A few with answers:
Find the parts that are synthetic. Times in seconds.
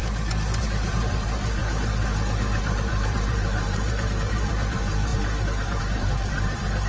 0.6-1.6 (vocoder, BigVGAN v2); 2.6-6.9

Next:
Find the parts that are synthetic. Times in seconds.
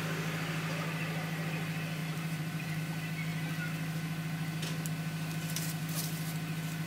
2.0-2.8 (vocoder, BigVGAN v2)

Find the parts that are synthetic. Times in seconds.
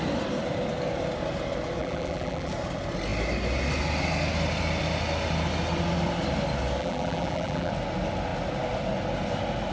1.8-2.5 (vocoder, BigVGAN v2); 6.8-7.7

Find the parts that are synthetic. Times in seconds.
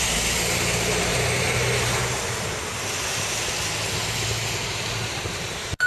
0.0-2.0 (vocoder, BigVGAN v2); 5.5-5.9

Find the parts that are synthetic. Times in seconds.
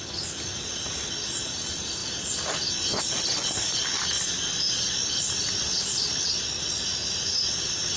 none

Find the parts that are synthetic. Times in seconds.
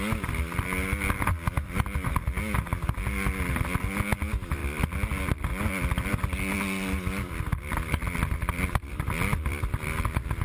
none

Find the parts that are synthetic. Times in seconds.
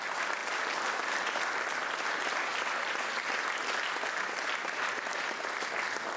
4.6-5.5 (vocoder, BigVGAN v2)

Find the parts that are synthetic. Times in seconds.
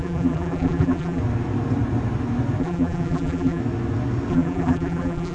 0.0-1.2 (vocoder, BigVGAN v2); 2.6-3.6; 4.3-5.3